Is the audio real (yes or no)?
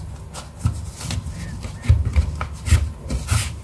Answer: yes